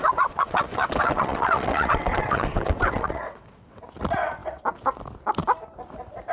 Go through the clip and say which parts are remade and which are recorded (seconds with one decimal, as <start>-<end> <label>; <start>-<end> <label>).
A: 0.0-3.8 remade; 3.8-6.3 recorded

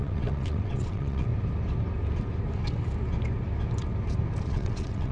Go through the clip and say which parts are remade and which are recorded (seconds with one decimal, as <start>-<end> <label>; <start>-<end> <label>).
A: 0.0-1.3 remade; 1.3-4.4 recorded; 4.4-5.1 remade

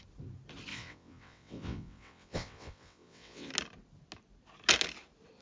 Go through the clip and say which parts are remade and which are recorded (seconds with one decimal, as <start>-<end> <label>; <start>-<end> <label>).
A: 0.0-0.7 recorded; 0.7-3.5 remade; 3.5-5.4 recorded

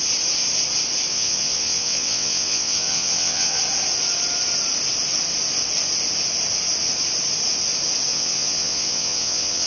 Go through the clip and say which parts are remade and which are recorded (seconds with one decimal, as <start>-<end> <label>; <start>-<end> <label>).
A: 0.0-1.1 recorded; 1.1-3.6 remade; 3.6-8.1 recorded; 8.1-9.7 remade